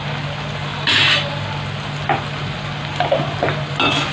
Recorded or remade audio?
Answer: recorded